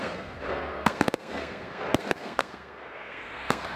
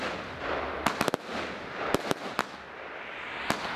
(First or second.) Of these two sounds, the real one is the second